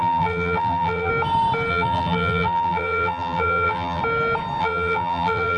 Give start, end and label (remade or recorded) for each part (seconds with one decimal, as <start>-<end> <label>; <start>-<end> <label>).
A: 0.0-1.1 remade; 1.1-1.7 recorded; 1.7-4.0 remade; 4.0-4.6 recorded; 4.6-5.6 remade